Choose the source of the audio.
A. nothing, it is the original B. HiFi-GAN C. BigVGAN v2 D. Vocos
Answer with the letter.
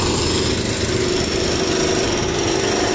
A